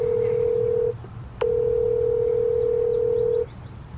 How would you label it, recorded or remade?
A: recorded